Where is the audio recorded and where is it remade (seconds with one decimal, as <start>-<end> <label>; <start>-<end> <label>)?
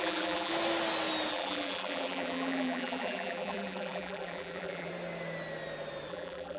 0.0-0.5 remade; 0.5-1.3 recorded; 1.3-4.9 remade; 4.9-6.1 recorded; 6.1-6.6 remade